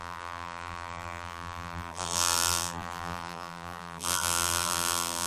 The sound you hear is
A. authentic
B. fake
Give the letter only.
B